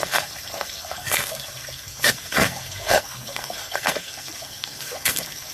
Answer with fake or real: fake